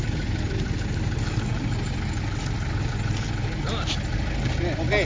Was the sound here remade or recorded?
recorded